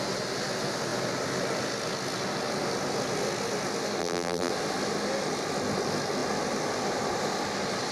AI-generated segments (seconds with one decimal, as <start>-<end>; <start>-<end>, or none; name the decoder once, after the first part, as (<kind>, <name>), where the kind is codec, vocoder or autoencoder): 4.0-4.5 (vocoder, BigVGAN v2)